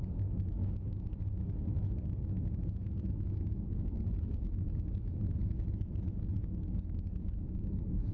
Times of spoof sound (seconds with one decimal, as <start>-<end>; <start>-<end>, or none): 0.0-5.4; 6.1-8.1